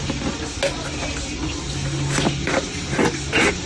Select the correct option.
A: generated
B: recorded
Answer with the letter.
B